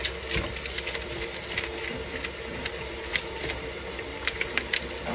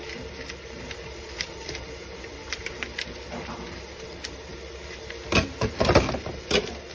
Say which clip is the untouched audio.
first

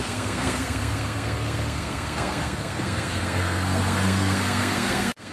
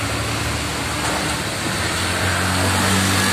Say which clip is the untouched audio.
second